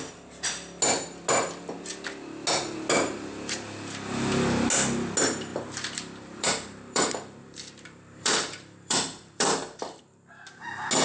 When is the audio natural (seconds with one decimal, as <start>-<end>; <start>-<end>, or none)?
0.0-5.5; 10.0-11.0